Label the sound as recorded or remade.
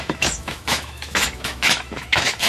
remade